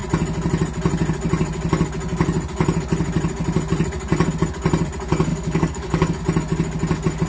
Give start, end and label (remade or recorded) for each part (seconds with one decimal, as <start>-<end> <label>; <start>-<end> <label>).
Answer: 0.0-5.3 recorded; 5.3-6.2 remade; 6.2-7.3 recorded